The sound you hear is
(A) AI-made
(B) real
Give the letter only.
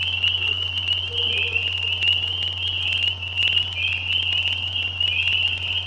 B